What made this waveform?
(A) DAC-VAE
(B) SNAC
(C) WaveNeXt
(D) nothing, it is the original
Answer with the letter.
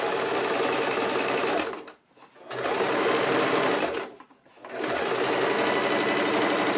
D